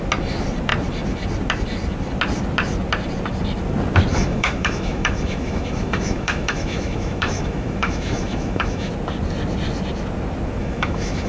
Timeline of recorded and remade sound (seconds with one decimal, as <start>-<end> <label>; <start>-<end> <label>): 0.0-4.1 recorded; 4.1-8.9 remade; 8.9-10.6 recorded; 10.6-11.3 remade